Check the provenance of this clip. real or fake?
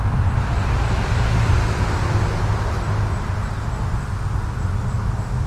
real